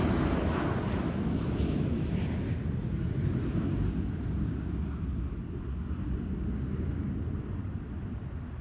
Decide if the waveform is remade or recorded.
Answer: recorded